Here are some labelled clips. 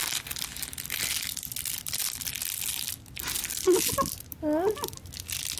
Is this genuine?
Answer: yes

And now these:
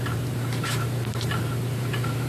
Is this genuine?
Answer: no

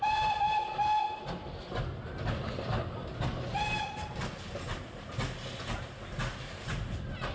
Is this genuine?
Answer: yes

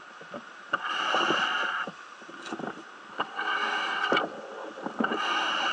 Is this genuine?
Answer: yes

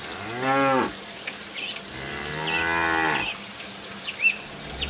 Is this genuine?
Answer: yes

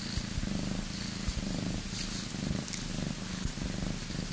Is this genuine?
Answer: yes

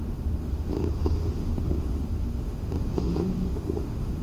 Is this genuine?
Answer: no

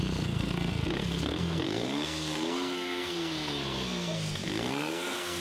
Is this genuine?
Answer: no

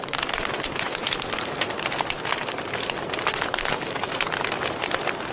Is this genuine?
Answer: yes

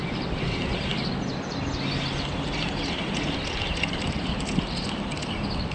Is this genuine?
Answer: yes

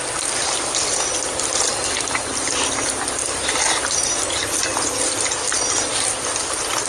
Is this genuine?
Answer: yes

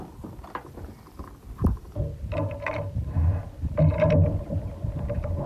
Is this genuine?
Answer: no